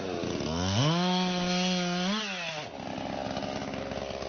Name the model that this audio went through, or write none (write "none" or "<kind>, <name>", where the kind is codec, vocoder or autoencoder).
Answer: none